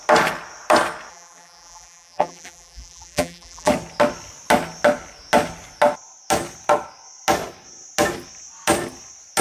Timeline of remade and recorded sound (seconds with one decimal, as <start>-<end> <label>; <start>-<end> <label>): 0.0-1.1 recorded; 1.1-3.7 remade; 3.7-9.4 recorded